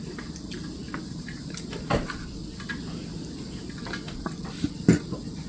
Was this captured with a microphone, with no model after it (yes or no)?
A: yes